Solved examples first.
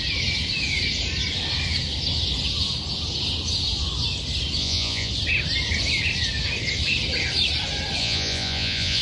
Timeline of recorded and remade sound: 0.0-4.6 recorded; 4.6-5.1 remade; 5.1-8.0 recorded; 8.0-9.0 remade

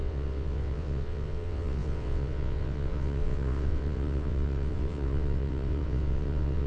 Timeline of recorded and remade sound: 0.0-6.7 remade

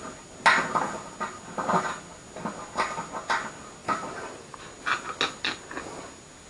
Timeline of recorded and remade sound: 0.0-3.8 recorded; 3.8-4.6 remade; 4.6-6.5 recorded

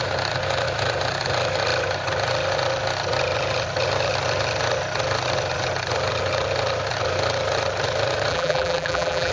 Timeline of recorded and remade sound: 0.0-8.3 recorded; 8.3-9.3 remade

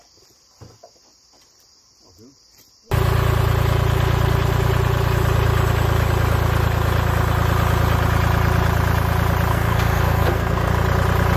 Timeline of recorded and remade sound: 0.0-9.5 recorded; 9.5-10.7 remade; 10.7-11.4 recorded

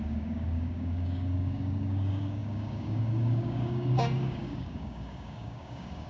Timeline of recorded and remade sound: 0.0-6.1 remade

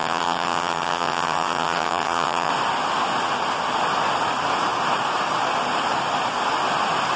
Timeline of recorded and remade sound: 0.0-2.5 remade; 2.5-7.2 recorded

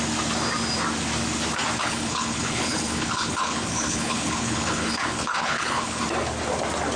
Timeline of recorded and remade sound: 0.0-1.8 recorded; 1.8-6.0 remade; 6.0-7.0 recorded